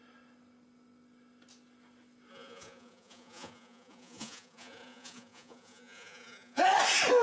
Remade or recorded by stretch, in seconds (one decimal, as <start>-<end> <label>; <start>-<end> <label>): 0.0-2.3 recorded; 2.3-6.6 remade; 6.6-7.2 recorded